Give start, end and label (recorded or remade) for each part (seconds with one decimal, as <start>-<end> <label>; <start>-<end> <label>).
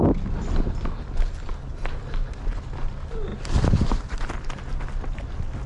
0.0-5.7 recorded